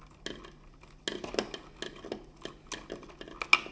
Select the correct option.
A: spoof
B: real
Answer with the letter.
B